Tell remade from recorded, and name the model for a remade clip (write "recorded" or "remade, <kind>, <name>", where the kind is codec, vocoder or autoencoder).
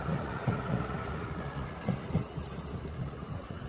remade, vocoder, Vocos